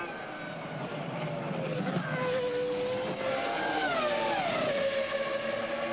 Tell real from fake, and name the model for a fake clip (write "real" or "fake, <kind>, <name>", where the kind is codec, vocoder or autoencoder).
real